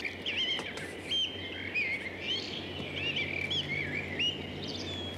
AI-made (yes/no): no